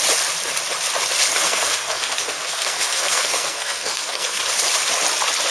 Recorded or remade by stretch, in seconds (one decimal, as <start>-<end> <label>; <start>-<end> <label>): 0.0-1.3 recorded; 1.3-4.4 remade; 4.4-5.5 recorded